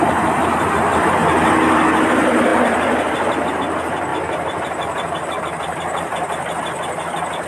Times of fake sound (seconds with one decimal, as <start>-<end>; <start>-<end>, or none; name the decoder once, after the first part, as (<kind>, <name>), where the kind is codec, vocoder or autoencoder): 0.0-1.2 (vocoder, BigVGAN v2); 2.0-6.1